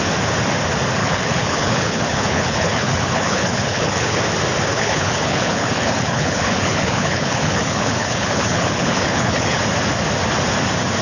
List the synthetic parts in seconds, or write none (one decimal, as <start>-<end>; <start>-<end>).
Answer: 1.0-4.2; 4.7-9.6